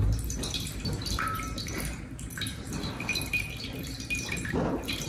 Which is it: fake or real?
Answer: fake